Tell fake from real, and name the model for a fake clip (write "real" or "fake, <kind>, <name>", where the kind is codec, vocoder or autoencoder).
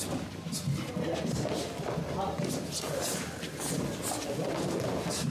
real